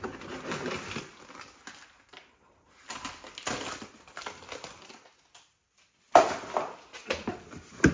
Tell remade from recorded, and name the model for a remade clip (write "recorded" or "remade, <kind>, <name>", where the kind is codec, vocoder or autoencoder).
recorded